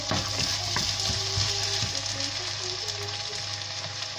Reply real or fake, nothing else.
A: real